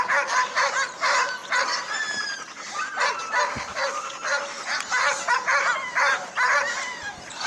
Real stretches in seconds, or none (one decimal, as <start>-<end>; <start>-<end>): 0.0-7.5